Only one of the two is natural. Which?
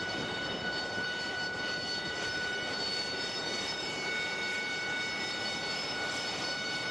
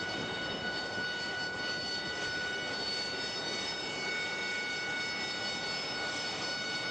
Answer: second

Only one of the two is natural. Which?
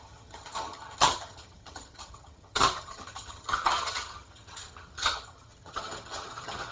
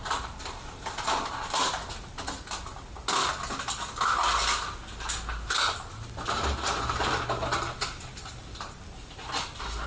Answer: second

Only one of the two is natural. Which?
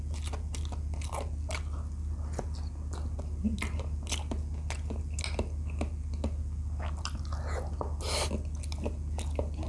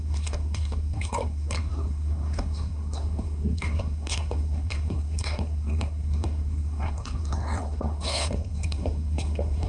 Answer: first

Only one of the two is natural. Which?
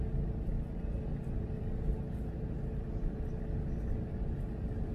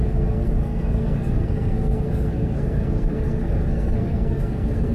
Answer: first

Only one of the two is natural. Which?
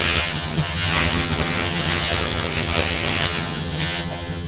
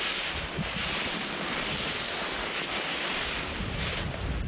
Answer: second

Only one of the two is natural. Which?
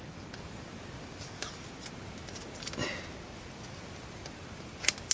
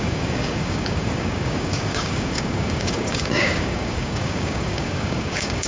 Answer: first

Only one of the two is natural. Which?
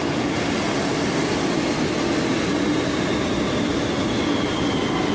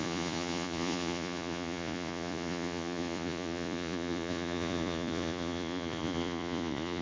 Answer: first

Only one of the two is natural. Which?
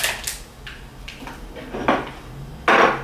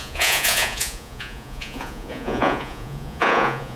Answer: first